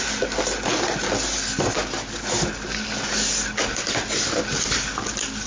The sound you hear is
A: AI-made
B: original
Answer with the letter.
B